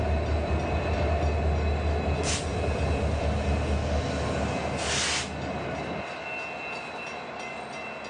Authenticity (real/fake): real